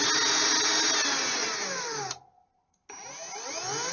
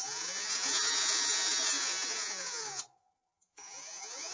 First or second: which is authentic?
first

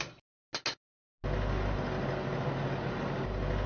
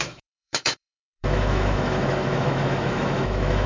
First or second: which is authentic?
first